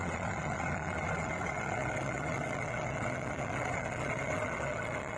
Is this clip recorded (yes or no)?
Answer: no